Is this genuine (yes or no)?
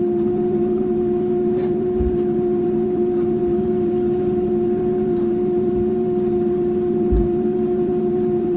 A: no